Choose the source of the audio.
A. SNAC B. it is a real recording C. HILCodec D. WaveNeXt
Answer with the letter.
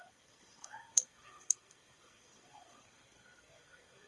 A